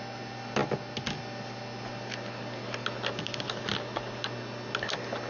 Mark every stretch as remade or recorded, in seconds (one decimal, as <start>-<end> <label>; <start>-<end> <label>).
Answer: 0.0-5.3 recorded